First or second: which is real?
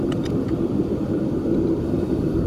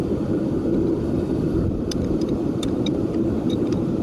first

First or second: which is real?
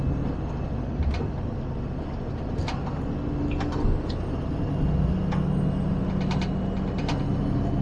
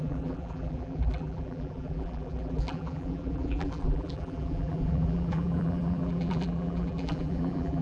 first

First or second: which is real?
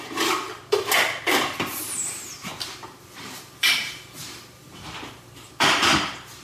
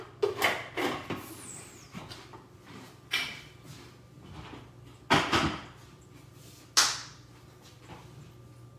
second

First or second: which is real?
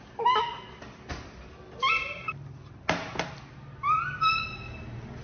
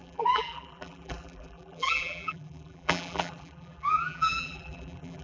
first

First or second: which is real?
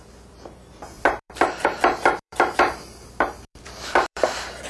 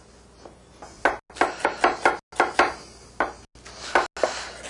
second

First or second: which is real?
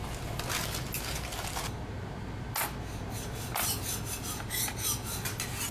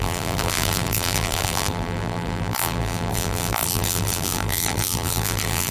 first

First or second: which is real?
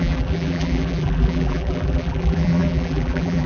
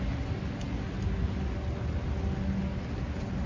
second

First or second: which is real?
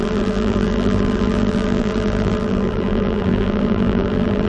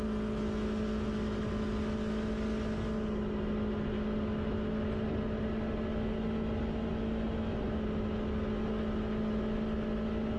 second